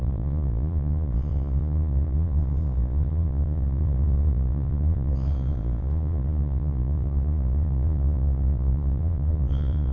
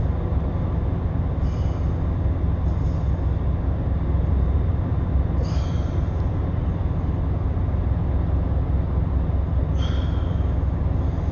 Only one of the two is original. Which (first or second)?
second